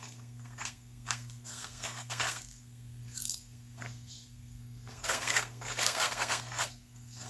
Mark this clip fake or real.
fake